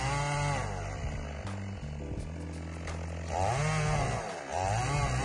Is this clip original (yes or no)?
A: yes